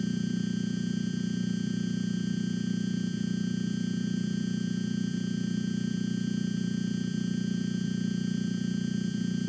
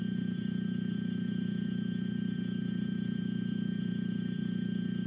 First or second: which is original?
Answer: first